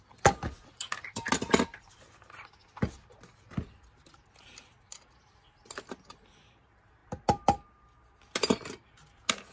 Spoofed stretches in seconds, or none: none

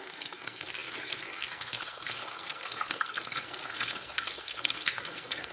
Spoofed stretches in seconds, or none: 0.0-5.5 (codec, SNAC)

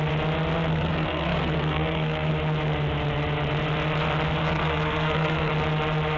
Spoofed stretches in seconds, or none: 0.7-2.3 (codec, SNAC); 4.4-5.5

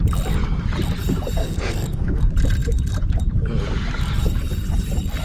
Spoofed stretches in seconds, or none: 1.4-2.2 (codec, SNAC)